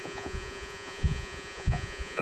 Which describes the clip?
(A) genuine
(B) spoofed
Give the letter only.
B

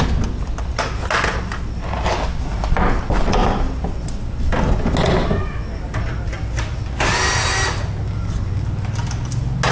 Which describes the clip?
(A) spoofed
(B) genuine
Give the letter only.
B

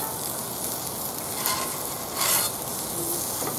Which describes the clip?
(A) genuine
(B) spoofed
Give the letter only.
A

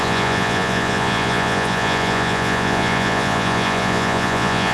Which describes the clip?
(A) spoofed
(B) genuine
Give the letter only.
A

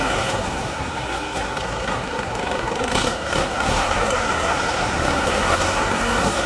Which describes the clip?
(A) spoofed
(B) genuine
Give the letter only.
A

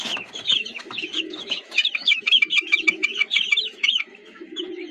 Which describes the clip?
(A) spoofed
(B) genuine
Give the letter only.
A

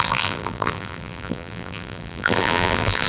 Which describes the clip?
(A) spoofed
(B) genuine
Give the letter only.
A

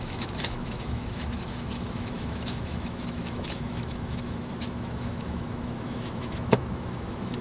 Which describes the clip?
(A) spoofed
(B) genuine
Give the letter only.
A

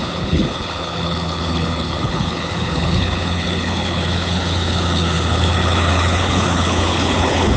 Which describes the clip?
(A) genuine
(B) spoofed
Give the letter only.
B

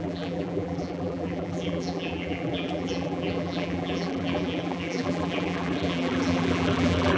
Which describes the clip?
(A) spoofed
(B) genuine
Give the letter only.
A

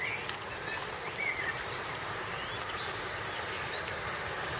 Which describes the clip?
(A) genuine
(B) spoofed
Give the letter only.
A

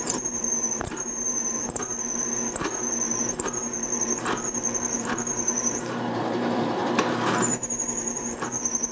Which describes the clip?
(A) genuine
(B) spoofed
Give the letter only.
B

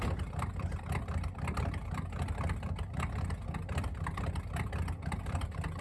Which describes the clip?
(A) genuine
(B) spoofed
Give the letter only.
A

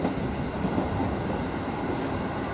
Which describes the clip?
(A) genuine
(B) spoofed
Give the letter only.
A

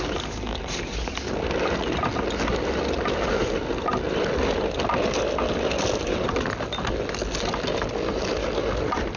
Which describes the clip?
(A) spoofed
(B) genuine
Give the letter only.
B